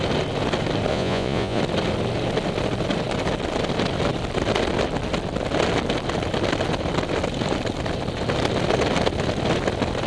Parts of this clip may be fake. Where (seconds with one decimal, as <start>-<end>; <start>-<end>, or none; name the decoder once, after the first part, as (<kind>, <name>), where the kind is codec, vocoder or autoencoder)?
0.9-1.6 (vocoder, Vocos)